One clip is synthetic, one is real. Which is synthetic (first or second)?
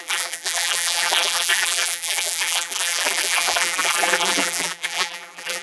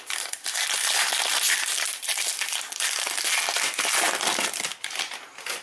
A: first